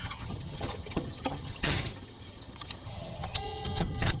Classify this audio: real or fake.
fake